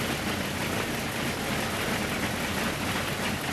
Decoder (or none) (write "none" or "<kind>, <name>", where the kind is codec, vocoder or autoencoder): none